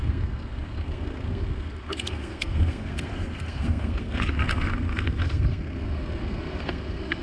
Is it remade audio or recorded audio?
remade